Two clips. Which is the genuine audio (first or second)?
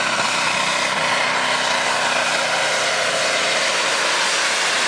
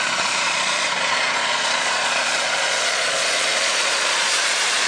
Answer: first